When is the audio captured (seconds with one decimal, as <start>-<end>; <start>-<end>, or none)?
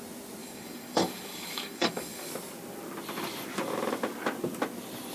0.0-0.4; 2.3-5.1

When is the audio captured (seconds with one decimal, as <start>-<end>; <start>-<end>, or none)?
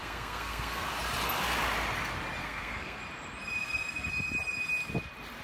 0.8-2.4; 3.0-3.6; 4.1-5.4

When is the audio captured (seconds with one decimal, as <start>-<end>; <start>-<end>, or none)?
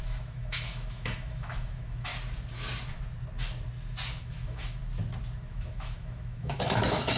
2.1-4.2; 4.8-5.5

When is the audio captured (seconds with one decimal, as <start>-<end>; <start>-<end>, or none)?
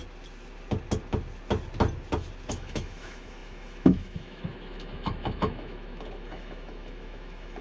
0.0-2.5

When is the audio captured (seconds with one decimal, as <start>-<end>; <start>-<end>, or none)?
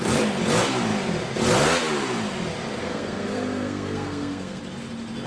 0.0-2.8; 4.6-5.3